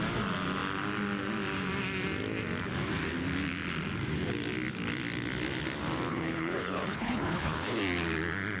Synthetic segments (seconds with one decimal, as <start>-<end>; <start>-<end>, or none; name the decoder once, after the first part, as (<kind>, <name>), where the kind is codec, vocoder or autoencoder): 6.1-7.8 (codec, HILCodec)